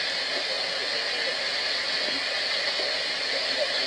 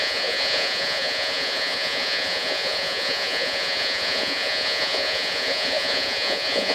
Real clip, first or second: first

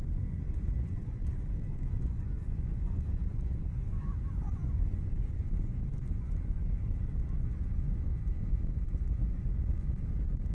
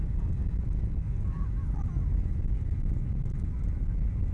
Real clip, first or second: second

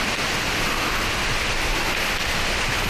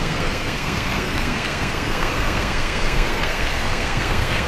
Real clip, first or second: first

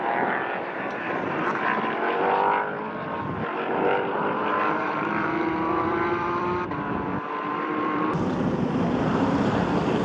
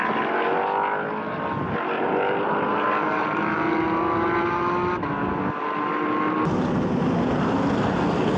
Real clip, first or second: second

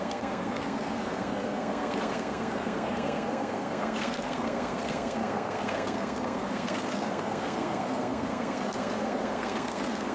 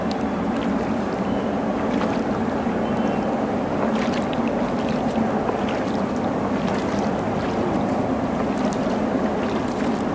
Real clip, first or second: second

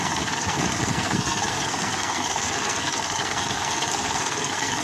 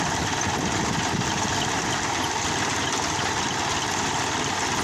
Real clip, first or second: second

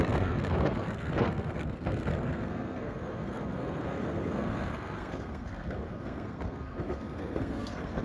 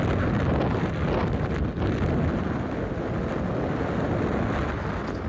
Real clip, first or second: second